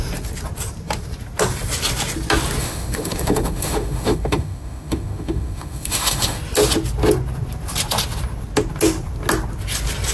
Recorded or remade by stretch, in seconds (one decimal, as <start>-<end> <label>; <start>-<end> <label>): 0.0-2.6 recorded; 2.6-6.4 remade; 6.4-10.1 recorded